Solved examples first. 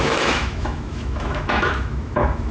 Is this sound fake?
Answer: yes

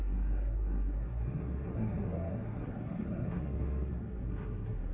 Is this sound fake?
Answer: yes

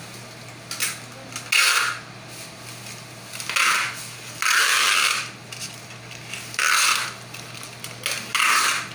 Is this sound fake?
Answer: no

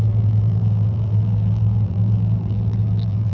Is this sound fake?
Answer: yes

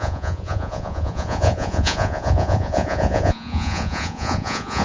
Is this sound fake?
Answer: yes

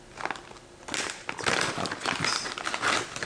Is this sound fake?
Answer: no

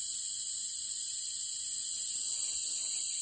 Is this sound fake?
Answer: no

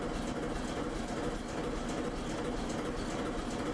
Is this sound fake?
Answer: no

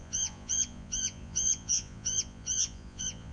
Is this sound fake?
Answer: yes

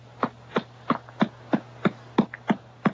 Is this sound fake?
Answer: no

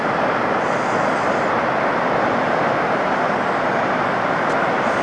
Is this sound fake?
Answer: no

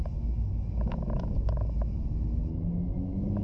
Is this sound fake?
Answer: yes